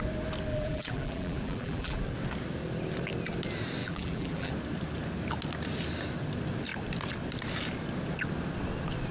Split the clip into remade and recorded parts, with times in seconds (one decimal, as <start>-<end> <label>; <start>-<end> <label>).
0.0-0.5 recorded; 0.5-2.0 remade; 2.0-3.8 recorded; 3.8-4.5 remade; 4.5-9.1 recorded